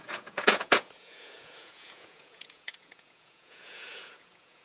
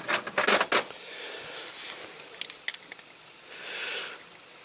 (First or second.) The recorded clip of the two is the second